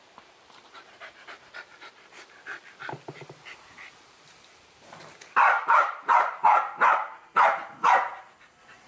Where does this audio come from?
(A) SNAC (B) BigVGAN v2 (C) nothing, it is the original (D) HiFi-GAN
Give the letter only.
B